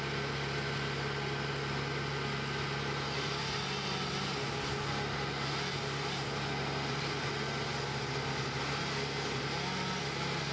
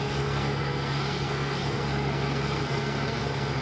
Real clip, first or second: first